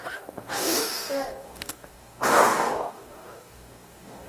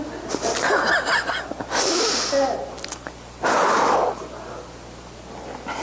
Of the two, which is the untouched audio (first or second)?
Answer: second